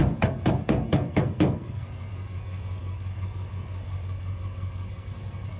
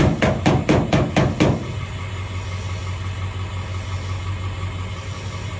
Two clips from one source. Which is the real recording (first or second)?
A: second